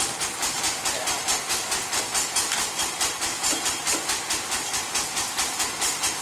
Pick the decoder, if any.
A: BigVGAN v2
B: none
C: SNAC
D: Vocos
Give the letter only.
B